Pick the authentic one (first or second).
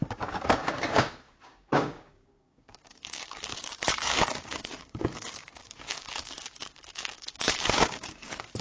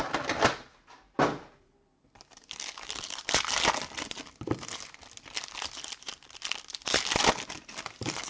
second